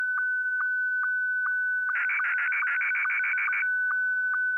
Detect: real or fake real